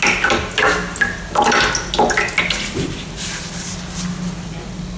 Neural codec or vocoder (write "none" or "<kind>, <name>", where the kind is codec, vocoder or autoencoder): none